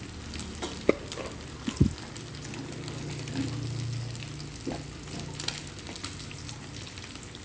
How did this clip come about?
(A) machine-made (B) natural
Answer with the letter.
B